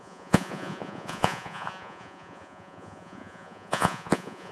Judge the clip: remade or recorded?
remade